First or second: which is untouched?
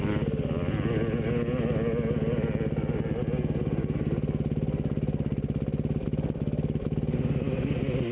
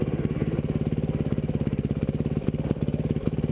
first